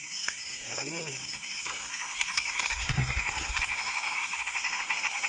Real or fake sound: fake